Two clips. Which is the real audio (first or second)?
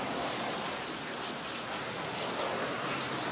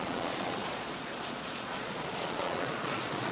first